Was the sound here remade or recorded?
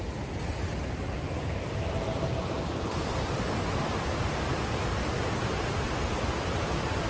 recorded